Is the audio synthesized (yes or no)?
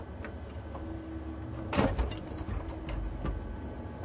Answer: no